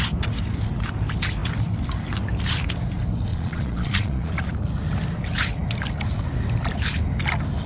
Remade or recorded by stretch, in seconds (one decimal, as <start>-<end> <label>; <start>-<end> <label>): 0.0-3.3 recorded; 3.3-4.5 remade; 4.5-7.7 recorded